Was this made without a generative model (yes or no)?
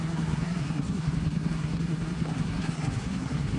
no